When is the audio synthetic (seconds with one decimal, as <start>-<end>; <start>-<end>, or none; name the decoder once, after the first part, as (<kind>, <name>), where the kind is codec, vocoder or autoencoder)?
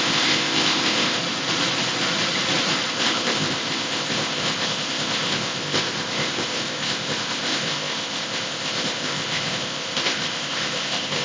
0.0-1.2 (codec, ZipCodec); 2.9-11.2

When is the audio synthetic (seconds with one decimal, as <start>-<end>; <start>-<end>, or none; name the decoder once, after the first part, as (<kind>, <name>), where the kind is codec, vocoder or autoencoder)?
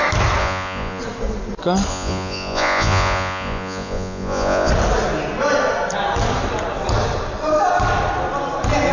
0.4-1.0 (vocoder, Vocos); 1.9-4.7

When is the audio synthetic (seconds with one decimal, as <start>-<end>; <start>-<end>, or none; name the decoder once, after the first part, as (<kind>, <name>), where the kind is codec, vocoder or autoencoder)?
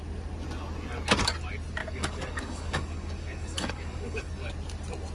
1.8-4.5 (codec, DAC)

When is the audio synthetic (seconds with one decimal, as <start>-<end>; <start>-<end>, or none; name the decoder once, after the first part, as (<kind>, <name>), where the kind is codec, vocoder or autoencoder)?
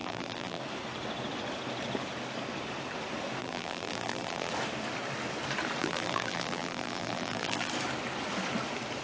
0.0-0.6 (vocoder, BigVGAN v2); 3.4-4.5; 5.8-7.7